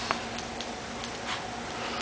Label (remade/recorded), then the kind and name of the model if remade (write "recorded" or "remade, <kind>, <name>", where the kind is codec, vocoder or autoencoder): recorded